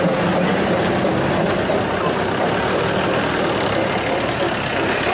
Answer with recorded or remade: recorded